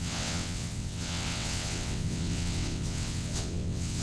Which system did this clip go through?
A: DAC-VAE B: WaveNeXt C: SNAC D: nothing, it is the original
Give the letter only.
B